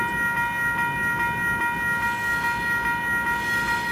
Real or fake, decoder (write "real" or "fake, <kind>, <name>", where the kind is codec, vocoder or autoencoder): real